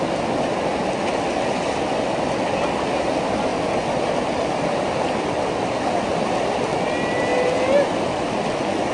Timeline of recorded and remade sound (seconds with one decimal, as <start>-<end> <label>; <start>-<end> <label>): 0.0-8.9 recorded